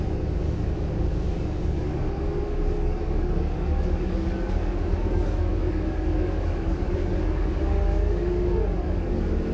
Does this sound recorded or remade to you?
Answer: remade